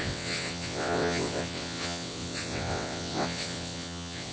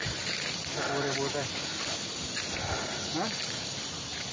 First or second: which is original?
second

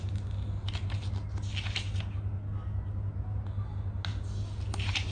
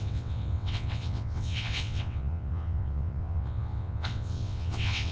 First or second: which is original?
first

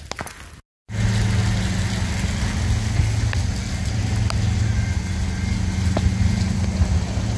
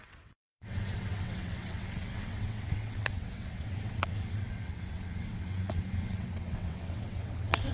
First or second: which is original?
first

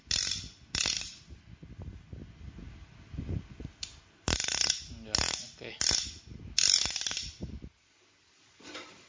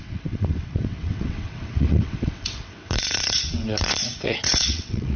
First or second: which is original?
first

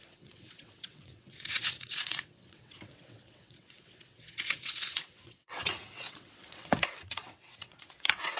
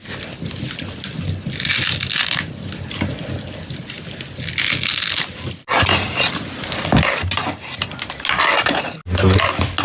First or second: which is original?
second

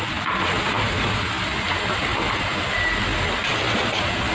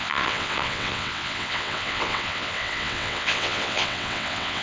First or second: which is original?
first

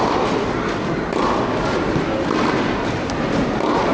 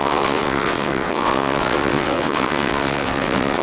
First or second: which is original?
first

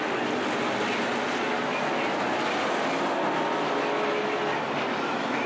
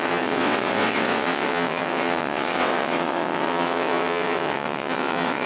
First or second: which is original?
first